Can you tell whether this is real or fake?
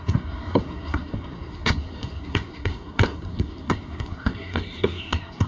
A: fake